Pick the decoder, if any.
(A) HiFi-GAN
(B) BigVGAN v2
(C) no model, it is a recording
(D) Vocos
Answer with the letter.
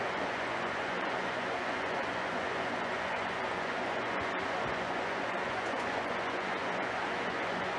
D